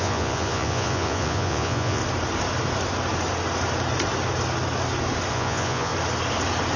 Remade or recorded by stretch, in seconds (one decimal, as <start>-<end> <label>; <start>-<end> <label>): 0.0-2.0 remade; 2.0-5.3 recorded; 5.3-5.9 remade; 5.9-6.8 recorded